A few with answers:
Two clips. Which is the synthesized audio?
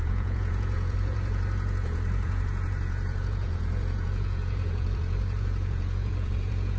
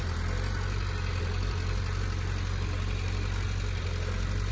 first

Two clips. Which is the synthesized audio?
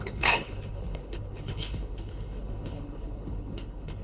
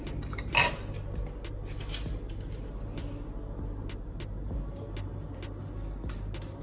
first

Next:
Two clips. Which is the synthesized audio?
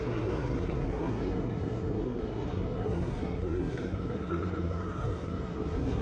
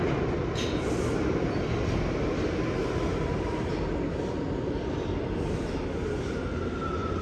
first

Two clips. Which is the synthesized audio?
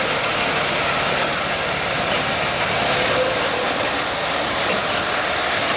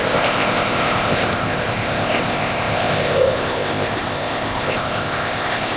second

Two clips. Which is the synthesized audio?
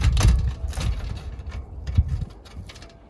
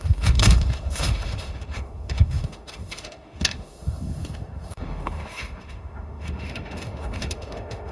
second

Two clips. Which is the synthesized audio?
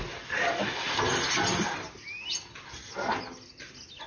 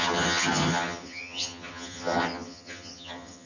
second